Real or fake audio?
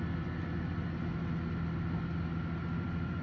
real